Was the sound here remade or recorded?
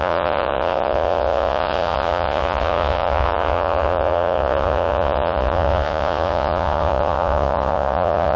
remade